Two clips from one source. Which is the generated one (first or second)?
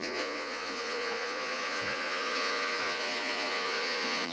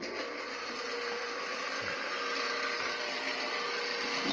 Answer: first